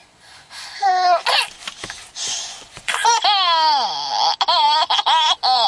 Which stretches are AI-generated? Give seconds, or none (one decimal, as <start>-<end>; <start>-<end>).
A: 0.0-0.9; 2.2-3.2

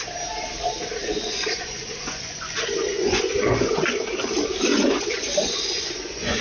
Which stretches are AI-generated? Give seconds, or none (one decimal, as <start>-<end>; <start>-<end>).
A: 1.0-4.1; 4.7-6.4

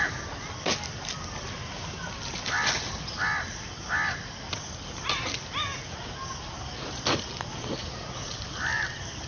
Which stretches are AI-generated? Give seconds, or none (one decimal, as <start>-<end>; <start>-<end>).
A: 7.8-8.3

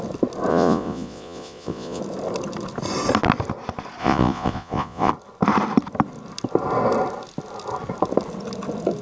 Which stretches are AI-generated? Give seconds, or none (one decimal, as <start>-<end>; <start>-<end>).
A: 0.5-2.0; 4.0-5.1

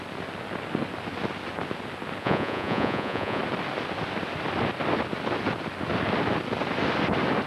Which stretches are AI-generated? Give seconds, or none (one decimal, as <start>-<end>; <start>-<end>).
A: 2.2-3.4